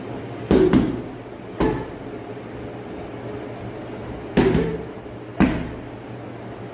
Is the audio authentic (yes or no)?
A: yes